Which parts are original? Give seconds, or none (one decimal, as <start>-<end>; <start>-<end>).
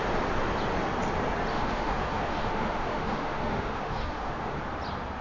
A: 0.0-1.5; 4.6-5.2